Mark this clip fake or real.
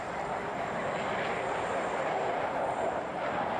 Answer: real